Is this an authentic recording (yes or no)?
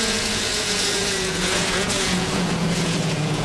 no